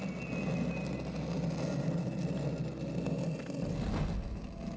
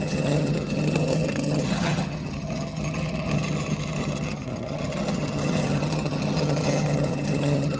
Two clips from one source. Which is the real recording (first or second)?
first